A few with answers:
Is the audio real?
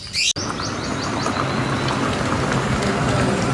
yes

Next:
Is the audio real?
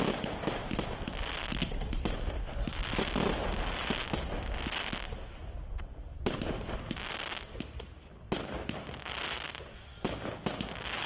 yes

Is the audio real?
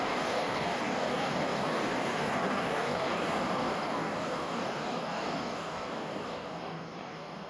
no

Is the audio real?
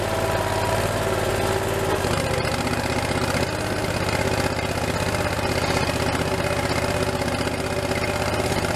yes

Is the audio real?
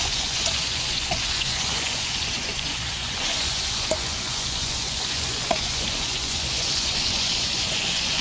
no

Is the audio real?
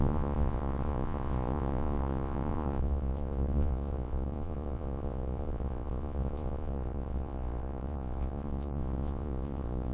no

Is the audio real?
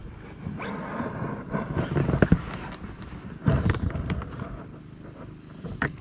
yes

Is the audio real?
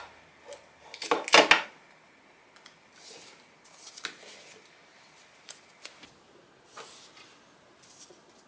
yes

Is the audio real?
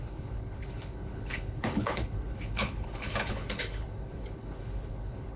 no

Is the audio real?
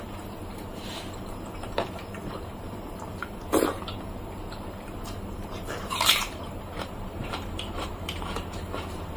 no